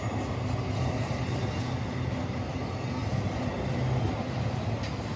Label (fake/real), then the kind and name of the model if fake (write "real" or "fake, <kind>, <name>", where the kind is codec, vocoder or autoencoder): real